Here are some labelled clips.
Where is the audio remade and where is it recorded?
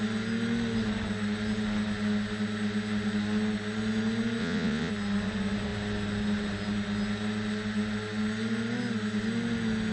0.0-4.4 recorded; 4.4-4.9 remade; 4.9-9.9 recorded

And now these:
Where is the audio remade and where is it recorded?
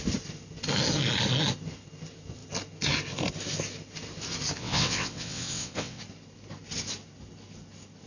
0.0-4.6 recorded; 4.6-6.0 remade; 6.0-8.1 recorded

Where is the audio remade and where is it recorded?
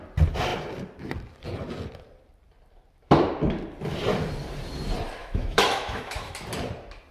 0.0-5.2 recorded; 5.2-6.3 remade; 6.3-7.1 recorded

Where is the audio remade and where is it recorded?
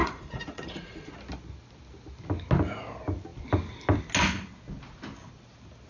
0.0-1.1 remade; 1.1-5.9 recorded